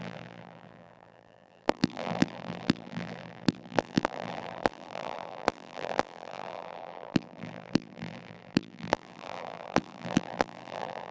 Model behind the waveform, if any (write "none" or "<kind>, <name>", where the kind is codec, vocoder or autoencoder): vocoder, BigVGAN v2